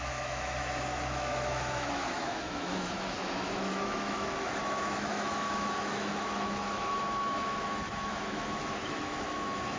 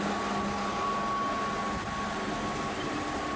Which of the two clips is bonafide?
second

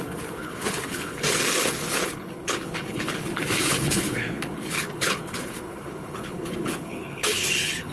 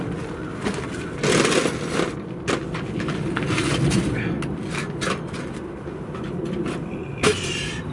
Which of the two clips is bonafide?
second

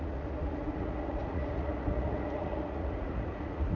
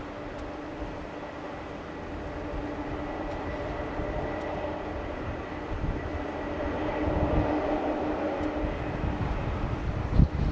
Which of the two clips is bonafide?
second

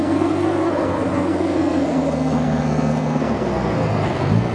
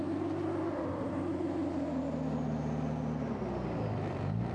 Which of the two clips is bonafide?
second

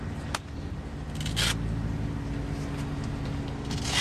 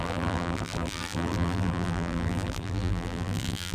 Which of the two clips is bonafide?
first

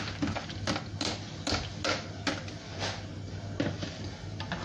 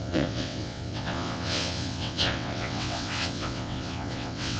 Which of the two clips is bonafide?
first